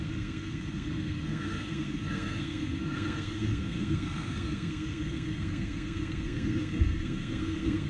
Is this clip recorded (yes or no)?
no